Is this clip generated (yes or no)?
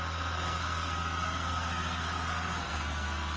yes